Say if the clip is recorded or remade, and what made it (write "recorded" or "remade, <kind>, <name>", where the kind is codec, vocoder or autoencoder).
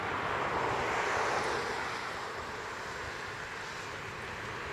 recorded